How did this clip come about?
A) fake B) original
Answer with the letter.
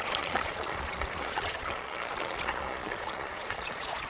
A